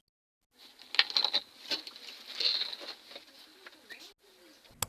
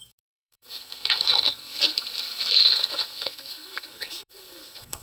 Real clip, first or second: first